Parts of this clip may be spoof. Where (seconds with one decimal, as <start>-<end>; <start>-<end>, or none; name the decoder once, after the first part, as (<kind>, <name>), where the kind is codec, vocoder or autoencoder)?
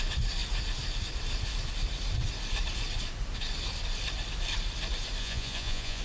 5.2-6.0 (vocoder, Vocos)